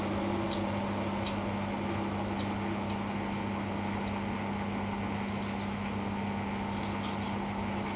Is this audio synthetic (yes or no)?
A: no